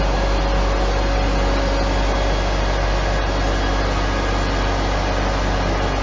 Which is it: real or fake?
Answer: real